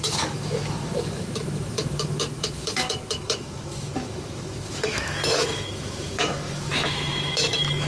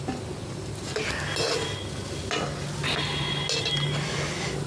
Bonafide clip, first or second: second